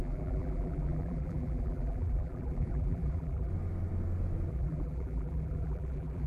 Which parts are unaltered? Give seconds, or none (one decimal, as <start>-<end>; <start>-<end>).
3.5-4.5